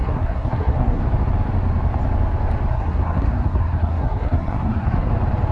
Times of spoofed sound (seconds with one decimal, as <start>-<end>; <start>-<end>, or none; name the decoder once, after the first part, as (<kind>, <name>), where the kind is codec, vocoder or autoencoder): 0.0-1.0 (codec, SNAC); 2.7-5.1